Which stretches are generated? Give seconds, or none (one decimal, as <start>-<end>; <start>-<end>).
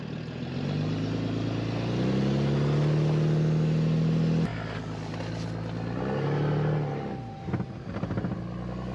none